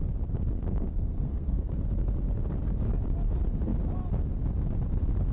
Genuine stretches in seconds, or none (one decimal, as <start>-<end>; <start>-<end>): 0.0-0.4; 1.7-5.3